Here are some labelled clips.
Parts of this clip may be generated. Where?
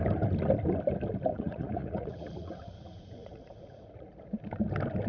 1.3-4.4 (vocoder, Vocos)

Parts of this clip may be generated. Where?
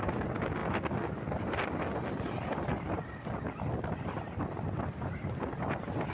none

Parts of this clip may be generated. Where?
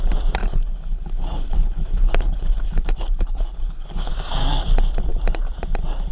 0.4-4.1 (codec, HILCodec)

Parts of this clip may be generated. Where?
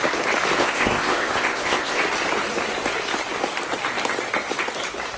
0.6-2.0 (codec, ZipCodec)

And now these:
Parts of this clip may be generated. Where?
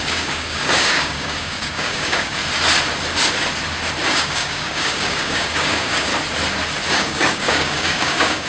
0.0-2.4 (codec, DAC); 4.1-6.1; 6.9-8.5